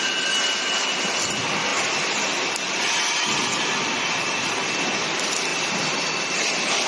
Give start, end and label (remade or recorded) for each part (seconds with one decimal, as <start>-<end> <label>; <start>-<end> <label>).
0.0-1.7 recorded; 1.7-4.4 remade; 4.4-5.5 recorded; 5.5-6.9 remade